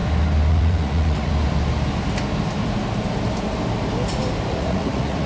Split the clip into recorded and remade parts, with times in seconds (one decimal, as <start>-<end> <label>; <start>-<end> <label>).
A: 0.0-0.5 recorded; 0.5-1.3 remade; 1.3-4.5 recorded; 4.5-5.3 remade

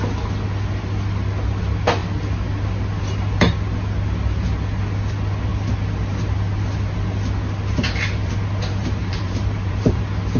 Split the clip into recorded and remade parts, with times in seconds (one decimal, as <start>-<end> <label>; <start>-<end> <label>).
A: 0.0-8.8 recorded; 8.8-10.0 remade; 10.0-10.4 recorded